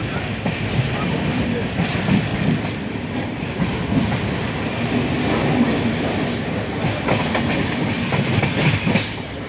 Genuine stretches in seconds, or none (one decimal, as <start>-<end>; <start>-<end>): 2.3-7.1